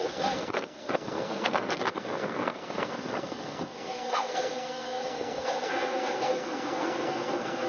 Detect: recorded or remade remade